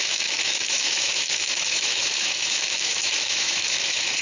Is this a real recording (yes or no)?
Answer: no